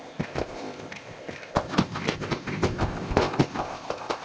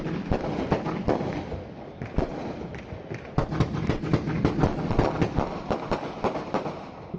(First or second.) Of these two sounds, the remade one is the first